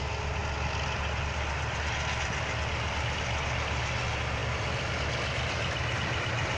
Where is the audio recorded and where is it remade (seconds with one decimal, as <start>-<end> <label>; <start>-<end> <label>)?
0.0-6.6 recorded